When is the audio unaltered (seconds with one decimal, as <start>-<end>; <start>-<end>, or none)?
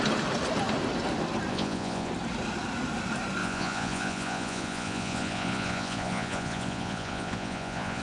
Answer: 0.0-1.5; 2.1-3.4